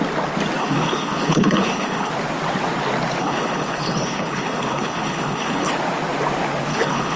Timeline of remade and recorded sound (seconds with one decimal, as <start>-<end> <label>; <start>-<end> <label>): 0.0-0.6 recorded; 0.6-2.1 remade; 2.1-3.2 recorded; 3.2-5.7 remade; 5.7-6.7 recorded; 6.7-7.2 remade